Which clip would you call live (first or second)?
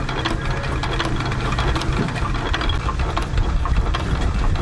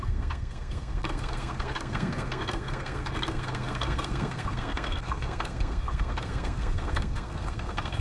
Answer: first